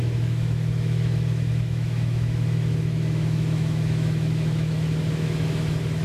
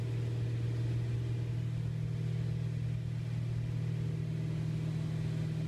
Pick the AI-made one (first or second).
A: first